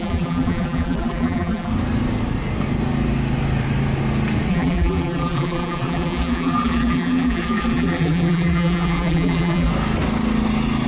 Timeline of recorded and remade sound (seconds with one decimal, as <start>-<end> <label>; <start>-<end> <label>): 0.0-1.7 remade; 1.7-4.5 recorded; 4.5-9.7 remade; 9.7-10.9 recorded